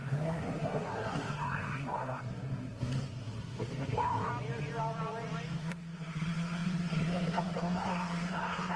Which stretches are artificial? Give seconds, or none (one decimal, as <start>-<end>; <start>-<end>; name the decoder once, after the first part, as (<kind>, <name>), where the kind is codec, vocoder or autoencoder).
0.0-4.3 (codec, SNAC); 5.6-8.8